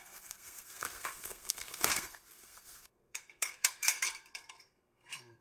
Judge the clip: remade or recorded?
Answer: remade